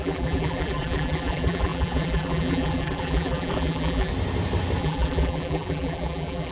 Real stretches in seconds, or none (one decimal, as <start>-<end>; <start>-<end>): 4.1-4.8